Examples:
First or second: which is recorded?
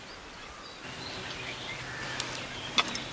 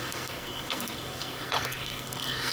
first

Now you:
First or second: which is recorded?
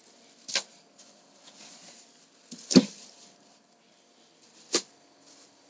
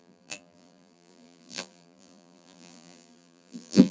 first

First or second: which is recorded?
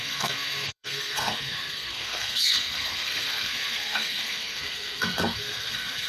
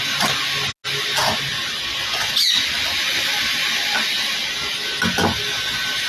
second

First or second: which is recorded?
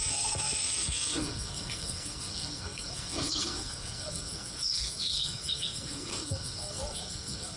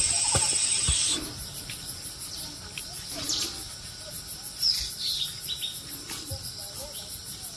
second